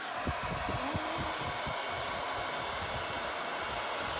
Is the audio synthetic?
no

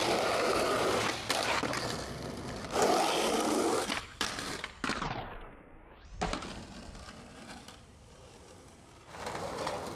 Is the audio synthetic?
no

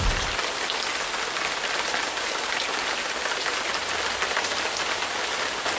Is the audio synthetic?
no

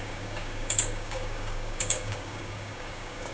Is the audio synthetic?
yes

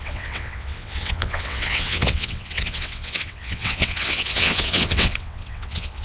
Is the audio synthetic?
yes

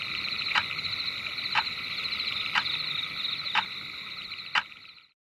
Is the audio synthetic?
no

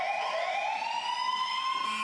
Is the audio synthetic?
no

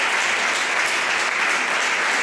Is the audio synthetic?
no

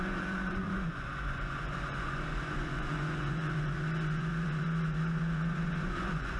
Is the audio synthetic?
yes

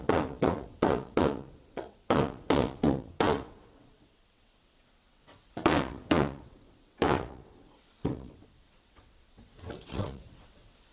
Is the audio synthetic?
yes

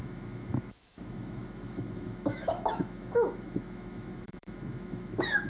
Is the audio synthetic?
yes